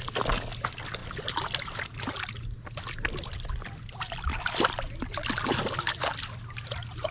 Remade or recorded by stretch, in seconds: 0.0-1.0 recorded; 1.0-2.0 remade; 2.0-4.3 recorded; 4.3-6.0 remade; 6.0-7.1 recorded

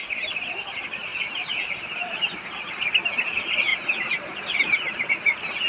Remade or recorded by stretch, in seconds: 0.0-3.7 remade; 3.7-4.4 recorded; 4.4-5.7 remade

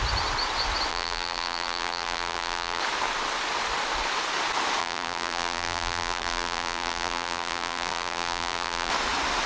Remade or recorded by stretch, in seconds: 0.0-0.9 recorded; 0.9-2.8 remade; 2.8-4.8 recorded; 4.8-8.9 remade; 8.9-9.5 recorded